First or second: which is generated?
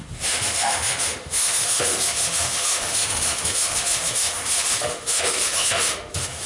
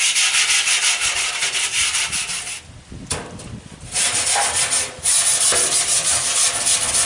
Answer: first